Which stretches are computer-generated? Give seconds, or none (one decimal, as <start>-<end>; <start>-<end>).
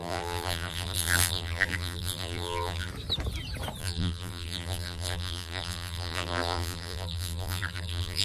0.0-2.9; 3.8-8.2